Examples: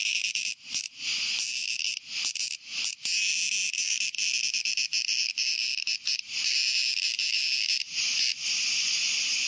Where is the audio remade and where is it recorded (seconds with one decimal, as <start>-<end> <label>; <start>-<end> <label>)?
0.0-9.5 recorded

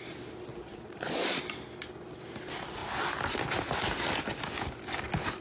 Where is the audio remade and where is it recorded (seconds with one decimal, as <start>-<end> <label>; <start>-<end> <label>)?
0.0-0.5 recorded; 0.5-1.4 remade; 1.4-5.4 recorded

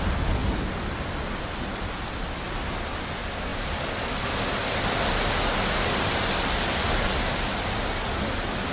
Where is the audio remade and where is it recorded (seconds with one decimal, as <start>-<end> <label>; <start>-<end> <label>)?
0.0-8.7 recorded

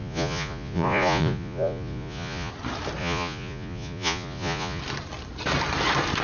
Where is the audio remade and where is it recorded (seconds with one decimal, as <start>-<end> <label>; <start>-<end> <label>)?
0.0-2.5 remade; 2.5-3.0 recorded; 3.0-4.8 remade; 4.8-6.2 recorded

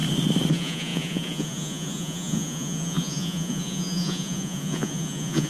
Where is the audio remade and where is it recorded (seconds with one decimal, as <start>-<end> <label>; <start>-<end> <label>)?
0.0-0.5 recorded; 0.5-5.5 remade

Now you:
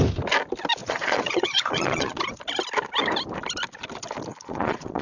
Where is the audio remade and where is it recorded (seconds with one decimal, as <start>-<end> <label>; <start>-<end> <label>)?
0.0-0.8 recorded; 0.8-2.2 remade; 2.2-4.3 recorded; 4.3-5.0 remade

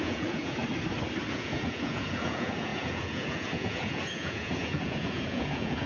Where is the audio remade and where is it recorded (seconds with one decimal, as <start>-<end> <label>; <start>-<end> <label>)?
0.0-0.6 remade; 0.6-1.3 recorded; 1.3-5.9 remade